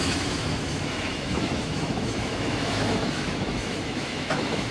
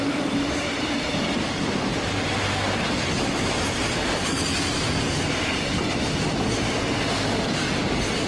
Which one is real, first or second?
second